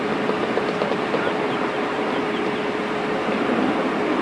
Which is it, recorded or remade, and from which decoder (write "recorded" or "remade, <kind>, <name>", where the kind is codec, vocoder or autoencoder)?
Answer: remade, vocoder, BigVGAN v2